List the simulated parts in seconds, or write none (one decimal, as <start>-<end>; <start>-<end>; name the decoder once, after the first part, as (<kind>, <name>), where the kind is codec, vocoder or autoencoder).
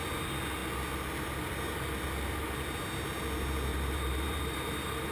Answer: 3.7-5.1 (vocoder, BigVGAN v2)